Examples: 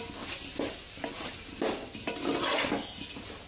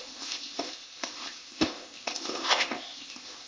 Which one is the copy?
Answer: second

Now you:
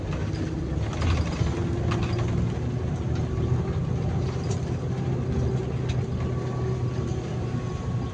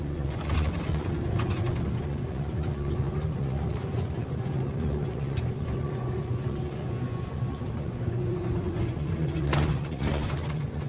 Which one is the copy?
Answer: second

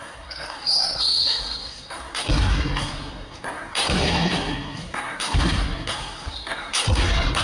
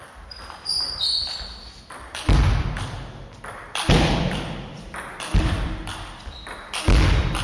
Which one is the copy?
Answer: first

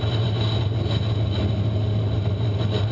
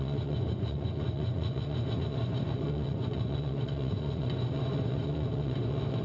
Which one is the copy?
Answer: second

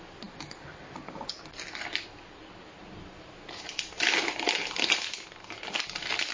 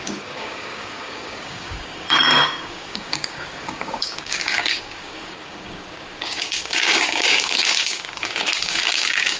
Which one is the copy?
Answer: second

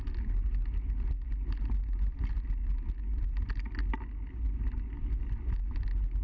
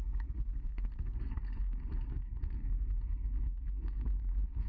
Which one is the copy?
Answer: second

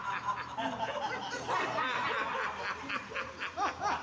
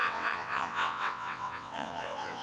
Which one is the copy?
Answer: second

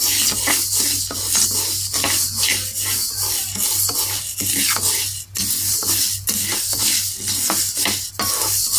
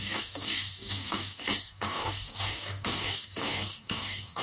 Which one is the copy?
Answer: second